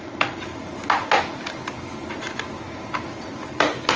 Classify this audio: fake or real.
real